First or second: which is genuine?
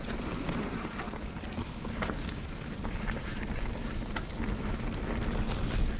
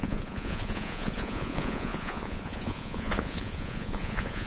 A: first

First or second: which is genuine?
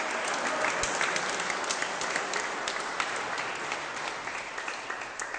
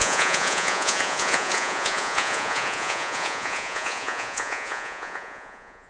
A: first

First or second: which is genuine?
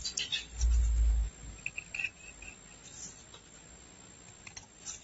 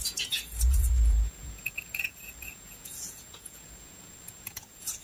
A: first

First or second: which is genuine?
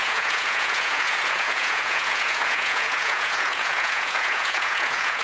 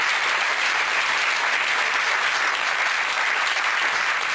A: second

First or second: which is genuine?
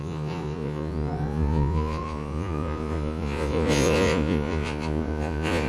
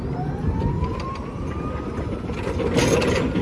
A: second